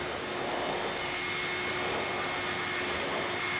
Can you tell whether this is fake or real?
real